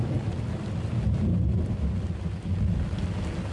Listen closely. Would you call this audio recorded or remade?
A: recorded